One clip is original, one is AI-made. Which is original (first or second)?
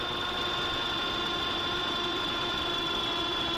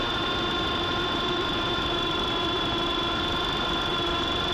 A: first